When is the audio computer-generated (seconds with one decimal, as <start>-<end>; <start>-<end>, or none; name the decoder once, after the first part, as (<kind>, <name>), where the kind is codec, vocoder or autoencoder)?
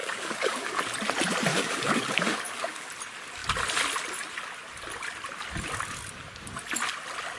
0.0-0.8 (codec, DAC); 1.5-2.9